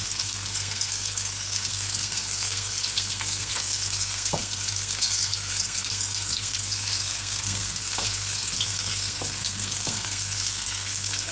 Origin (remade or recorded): remade